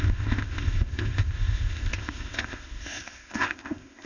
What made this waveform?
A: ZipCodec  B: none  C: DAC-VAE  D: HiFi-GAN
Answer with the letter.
A